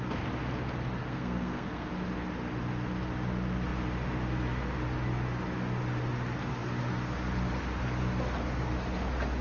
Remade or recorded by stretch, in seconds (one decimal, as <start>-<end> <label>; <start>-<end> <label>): 0.0-1.0 recorded; 1.0-1.9 remade; 1.9-9.4 recorded